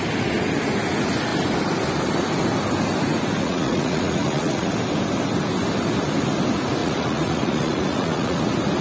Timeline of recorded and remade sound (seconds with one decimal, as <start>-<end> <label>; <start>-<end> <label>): 0.0-3.4 recorded; 3.4-4.7 remade; 4.7-6.8 recorded; 6.8-8.4 remade; 8.4-8.8 recorded